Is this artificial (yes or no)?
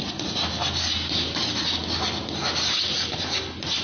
no